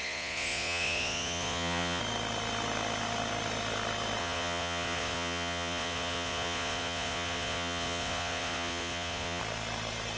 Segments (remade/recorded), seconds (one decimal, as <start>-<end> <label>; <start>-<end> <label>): 0.0-2.0 remade; 2.0-4.2 recorded; 4.2-9.4 remade; 9.4-10.2 recorded